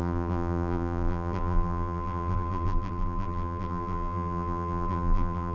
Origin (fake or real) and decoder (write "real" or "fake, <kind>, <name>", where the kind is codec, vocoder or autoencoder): fake, vocoder, BigVGAN v2